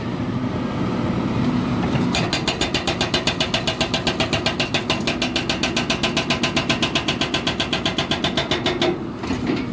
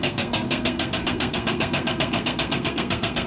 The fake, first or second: second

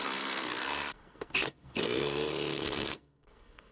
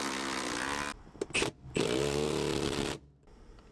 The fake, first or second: first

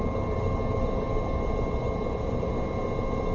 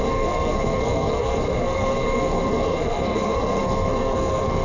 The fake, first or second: second